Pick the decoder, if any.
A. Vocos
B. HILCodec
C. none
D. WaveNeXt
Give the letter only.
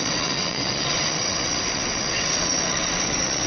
D